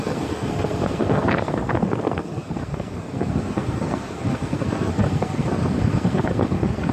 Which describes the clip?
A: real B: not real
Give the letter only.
B